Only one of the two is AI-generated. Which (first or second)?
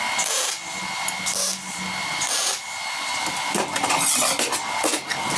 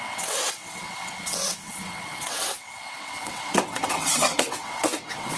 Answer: second